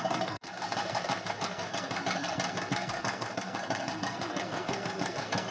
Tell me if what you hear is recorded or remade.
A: remade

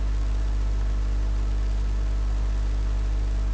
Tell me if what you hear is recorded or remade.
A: recorded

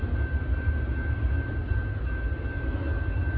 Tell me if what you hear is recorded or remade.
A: recorded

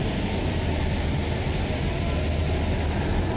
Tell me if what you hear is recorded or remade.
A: recorded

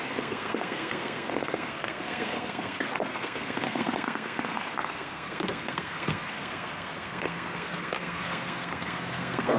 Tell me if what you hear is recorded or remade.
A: remade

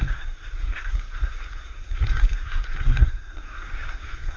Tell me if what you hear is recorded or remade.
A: remade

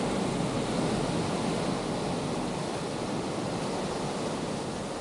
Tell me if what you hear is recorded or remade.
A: recorded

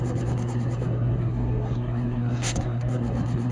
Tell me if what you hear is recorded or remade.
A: remade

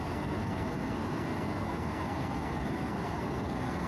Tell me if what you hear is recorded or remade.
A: remade